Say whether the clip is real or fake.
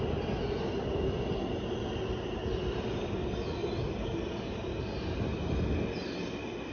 real